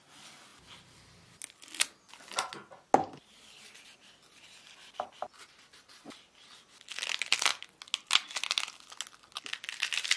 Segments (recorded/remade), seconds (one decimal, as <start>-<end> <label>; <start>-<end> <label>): 0.0-10.2 recorded